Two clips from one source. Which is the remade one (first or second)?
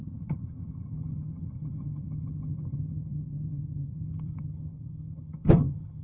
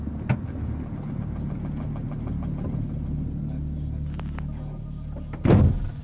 first